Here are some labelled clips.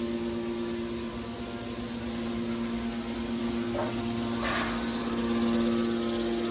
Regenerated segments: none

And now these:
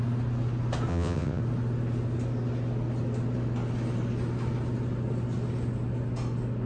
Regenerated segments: 0.9-1.4 (vocoder, WaveNeXt)